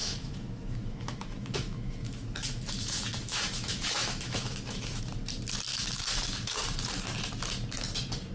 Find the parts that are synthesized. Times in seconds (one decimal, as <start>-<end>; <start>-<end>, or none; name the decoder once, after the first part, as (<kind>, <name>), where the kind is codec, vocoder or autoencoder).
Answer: 0.0-5.0 (autoencoder, DAC-VAE); 5.7-6.6